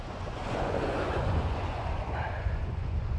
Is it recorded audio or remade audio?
remade